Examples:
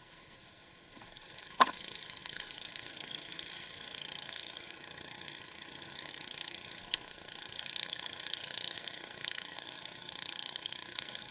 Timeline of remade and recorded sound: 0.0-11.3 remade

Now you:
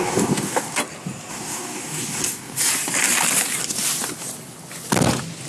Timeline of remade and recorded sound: 0.0-0.8 remade; 0.8-1.3 recorded; 1.3-2.7 remade; 2.7-5.5 recorded

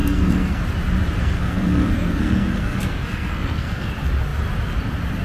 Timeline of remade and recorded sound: 0.0-0.6 remade; 0.6-1.2 recorded; 1.2-3.9 remade; 3.9-5.2 recorded

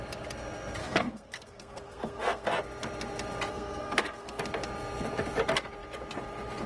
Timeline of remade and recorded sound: 0.0-0.8 recorded; 0.8-2.6 remade; 2.6-3.5 recorded; 3.5-4.4 remade; 4.4-6.7 recorded

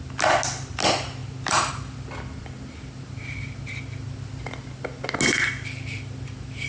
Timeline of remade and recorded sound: 0.0-6.7 recorded